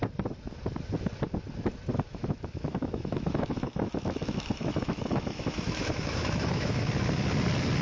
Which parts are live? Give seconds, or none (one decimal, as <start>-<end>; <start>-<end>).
0.0-2.1; 6.8-7.8

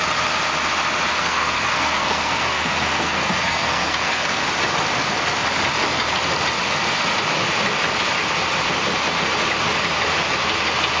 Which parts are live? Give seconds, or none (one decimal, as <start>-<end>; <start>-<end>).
0.0-1.1; 4.4-11.0